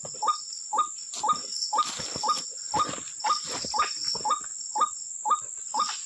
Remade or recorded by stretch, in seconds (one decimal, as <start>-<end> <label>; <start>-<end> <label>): 0.0-6.1 recorded